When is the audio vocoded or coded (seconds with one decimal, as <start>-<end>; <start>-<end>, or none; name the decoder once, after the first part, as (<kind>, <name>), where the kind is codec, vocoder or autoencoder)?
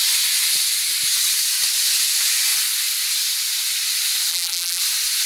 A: 4.3-4.8 (vocoder, BigVGAN v2)